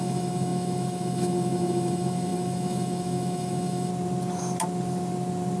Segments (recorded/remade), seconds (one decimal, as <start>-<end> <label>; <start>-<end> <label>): 0.0-3.9 remade; 3.9-5.6 recorded